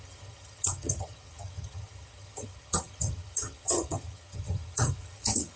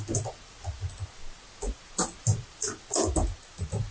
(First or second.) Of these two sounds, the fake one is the first